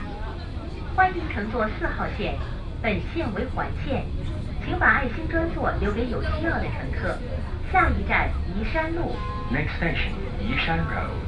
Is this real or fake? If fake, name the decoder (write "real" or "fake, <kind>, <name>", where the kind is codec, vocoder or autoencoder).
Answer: real